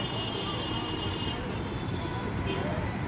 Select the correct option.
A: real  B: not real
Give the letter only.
A